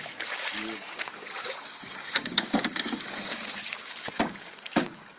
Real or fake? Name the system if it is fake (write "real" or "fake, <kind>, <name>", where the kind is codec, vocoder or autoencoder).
fake, codec, DAC